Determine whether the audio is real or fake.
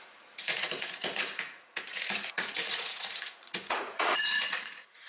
fake